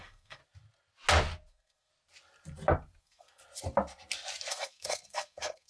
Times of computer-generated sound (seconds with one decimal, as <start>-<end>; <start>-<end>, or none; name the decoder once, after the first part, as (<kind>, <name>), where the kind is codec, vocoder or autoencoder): 0.0-0.4 (codec, SNAC); 1.5-1.9; 3.0-3.4; 4.5-5.7